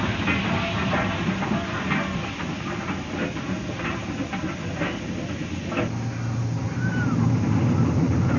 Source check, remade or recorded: recorded